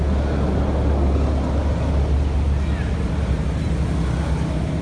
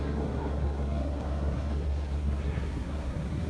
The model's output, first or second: second